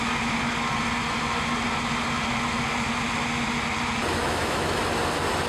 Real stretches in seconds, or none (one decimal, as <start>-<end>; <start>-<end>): 0.0-4.2; 4.8-5.5